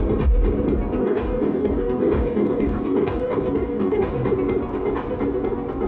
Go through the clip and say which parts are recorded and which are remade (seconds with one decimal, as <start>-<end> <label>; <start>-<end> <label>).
0.0-1.0 recorded; 1.0-4.1 remade; 4.1-5.9 recorded